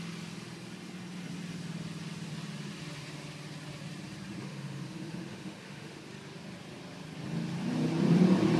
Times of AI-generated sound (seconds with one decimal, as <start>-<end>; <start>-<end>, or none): 4.4-6.0